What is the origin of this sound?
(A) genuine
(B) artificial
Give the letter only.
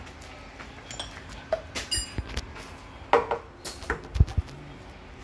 A